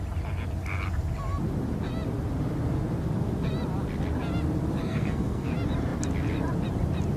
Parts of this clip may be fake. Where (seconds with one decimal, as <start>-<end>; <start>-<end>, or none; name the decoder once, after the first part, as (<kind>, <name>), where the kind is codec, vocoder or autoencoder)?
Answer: 4.8-5.5 (codec, SNAC)